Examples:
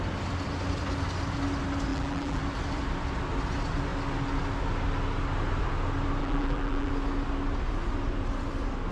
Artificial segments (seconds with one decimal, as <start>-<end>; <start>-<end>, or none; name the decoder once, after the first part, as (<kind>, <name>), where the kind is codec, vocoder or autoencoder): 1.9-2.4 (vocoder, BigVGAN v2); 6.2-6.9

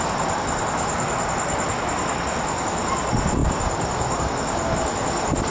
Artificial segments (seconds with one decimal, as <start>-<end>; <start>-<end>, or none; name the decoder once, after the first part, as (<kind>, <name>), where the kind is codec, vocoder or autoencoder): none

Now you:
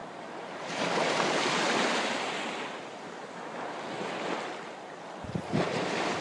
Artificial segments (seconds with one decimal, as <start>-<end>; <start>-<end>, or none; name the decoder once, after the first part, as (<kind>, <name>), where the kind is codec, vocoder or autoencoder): none